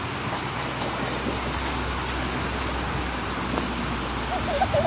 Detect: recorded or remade recorded